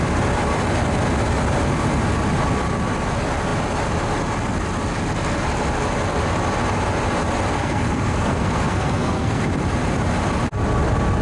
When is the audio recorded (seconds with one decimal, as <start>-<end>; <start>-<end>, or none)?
0.0-7.5; 9.5-11.2